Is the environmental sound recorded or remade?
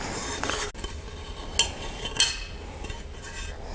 recorded